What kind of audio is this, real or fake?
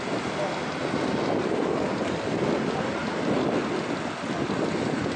real